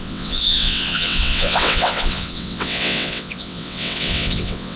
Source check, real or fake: fake